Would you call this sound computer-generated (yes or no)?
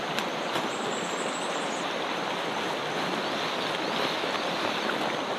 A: no